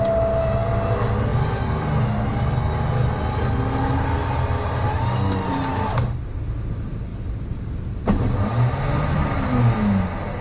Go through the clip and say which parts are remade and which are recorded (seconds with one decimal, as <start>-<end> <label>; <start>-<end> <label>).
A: 0.0-10.4 recorded